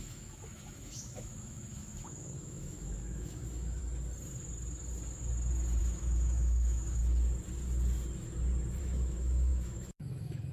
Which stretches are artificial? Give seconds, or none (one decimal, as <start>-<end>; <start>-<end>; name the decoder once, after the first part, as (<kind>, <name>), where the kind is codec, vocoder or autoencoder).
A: 0.0-3.8 (autoencoder, DAC-VAE); 5.8-7.0; 8.8-10.5